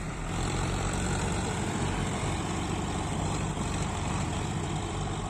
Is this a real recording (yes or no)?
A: no